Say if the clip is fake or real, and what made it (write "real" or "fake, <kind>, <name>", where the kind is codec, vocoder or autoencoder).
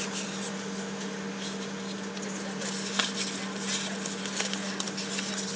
real